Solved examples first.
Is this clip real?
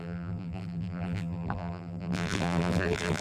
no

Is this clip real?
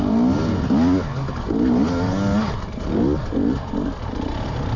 yes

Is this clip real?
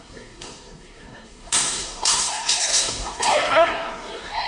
no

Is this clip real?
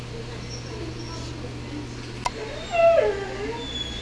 yes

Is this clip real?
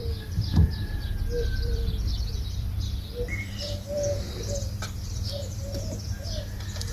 no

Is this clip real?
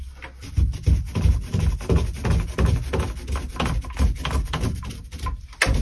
yes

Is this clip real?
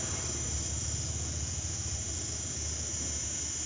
yes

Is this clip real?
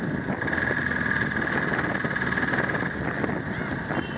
yes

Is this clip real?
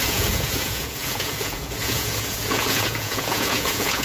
no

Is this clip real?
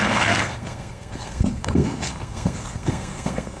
no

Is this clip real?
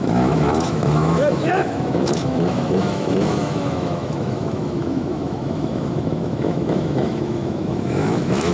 no